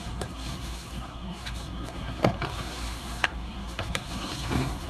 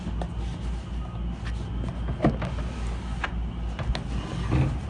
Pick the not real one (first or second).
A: first